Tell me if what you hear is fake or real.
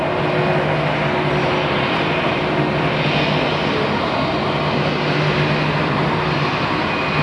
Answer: real